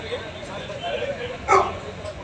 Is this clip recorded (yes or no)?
no